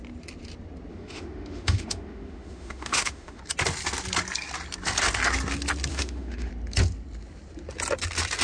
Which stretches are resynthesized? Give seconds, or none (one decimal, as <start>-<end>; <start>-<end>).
0.9-3.4; 5.9-6.5